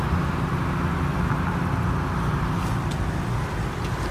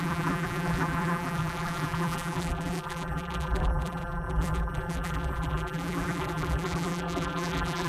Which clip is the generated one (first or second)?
second